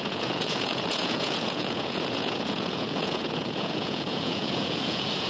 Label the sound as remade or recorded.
remade